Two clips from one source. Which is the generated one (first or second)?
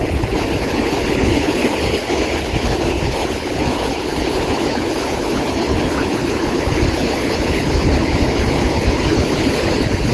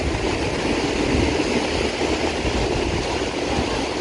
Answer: first